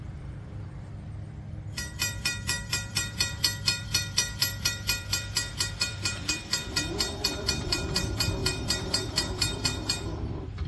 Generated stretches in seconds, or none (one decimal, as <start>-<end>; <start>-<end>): 0.0-10.7